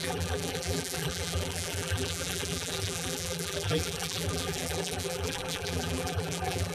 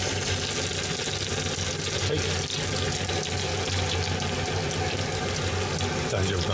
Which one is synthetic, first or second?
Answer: first